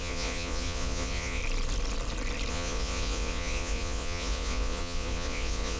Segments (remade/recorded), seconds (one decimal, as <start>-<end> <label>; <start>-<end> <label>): 0.0-1.4 remade; 1.4-2.5 recorded; 2.5-5.8 remade